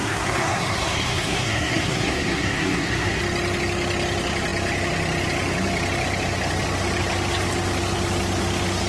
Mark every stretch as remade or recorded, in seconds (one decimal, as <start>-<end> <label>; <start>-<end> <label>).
0.0-3.2 remade; 3.2-8.9 recorded